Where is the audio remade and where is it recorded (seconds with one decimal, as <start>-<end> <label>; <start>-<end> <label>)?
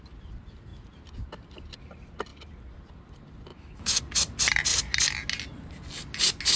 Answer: 0.0-3.5 recorded; 3.5-4.0 remade; 4.0-6.6 recorded